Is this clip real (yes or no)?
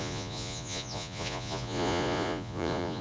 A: no